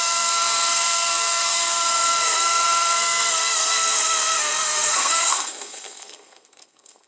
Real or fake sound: fake